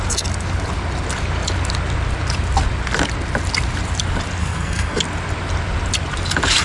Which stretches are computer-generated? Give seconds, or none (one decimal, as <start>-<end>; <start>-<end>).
4.4-5.0